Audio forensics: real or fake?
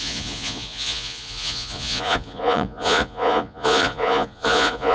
fake